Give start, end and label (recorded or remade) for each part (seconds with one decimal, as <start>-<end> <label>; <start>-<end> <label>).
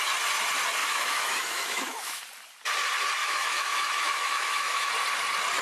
0.0-0.8 recorded; 0.8-2.2 remade; 2.2-3.2 recorded; 3.2-4.9 remade; 4.9-5.6 recorded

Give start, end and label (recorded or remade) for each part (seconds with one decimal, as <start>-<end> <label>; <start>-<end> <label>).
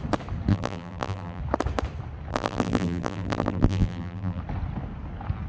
0.0-0.5 recorded; 0.5-1.4 remade; 1.4-2.3 recorded; 2.3-4.4 remade; 4.4-5.5 recorded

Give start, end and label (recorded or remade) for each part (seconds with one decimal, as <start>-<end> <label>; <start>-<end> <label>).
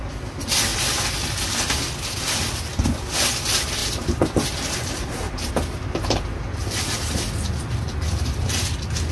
0.0-3.8 recorded; 3.8-5.5 remade; 5.5-9.1 recorded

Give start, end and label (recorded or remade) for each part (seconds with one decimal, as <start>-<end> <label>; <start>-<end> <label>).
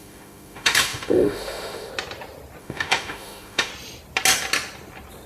0.0-1.9 remade; 1.9-2.6 recorded; 2.6-3.7 remade; 3.7-5.3 recorded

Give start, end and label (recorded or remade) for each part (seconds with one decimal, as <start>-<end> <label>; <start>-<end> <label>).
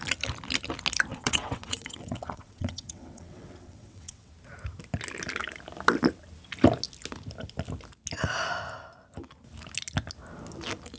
0.0-1.1 recorded; 1.1-4.3 remade; 4.3-11.0 recorded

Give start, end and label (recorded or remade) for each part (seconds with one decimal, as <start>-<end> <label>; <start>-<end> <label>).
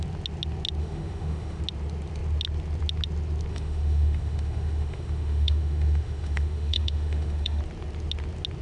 0.0-0.8 recorded; 0.8-1.6 remade; 1.6-3.5 recorded; 3.5-7.6 remade; 7.6-8.6 recorded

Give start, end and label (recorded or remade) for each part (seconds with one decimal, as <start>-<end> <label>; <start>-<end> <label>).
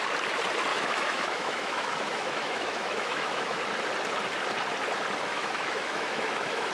0.0-0.7 recorded; 0.7-3.6 remade; 3.6-5.3 recorded; 5.3-6.7 remade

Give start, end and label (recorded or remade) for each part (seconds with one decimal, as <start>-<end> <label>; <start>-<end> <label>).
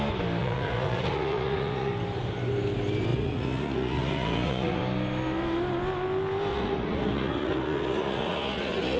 0.0-0.4 recorded; 0.4-1.9 remade; 1.9-3.1 recorded; 3.1-4.8 remade; 4.8-6.5 recorded; 6.5-9.0 remade